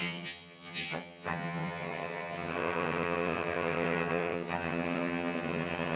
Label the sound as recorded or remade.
remade